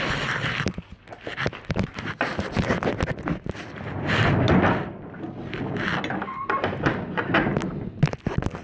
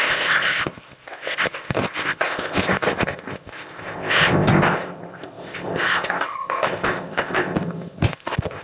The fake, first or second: second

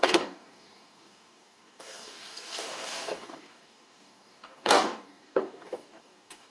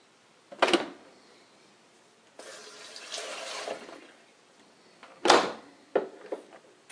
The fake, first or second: first